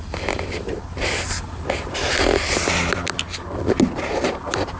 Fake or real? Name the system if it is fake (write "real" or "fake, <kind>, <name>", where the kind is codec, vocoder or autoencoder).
fake, vocoder, BigVGAN v2